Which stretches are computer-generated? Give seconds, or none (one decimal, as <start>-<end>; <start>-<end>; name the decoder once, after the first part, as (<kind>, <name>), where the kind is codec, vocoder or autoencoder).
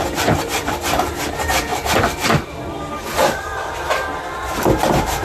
0.0-1.7 (vocoder, BigVGAN v2); 4.8-5.2